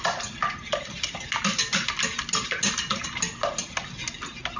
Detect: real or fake real